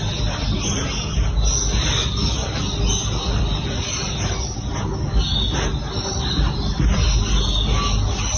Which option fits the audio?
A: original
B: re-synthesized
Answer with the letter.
A